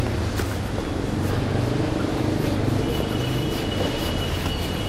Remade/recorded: recorded